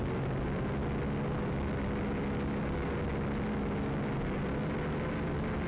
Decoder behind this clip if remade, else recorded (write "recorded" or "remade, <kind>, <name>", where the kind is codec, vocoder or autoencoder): recorded